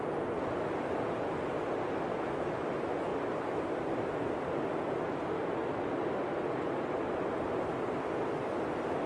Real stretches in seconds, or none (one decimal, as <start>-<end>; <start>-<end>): 0.0-2.1; 2.7-9.1